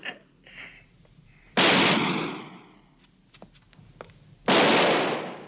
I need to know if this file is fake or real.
real